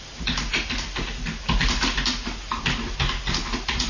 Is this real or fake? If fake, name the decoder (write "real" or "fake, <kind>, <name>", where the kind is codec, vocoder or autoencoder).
real